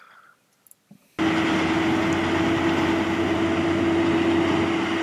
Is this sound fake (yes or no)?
no